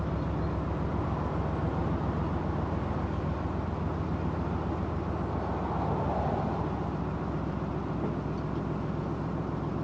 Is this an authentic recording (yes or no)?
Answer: yes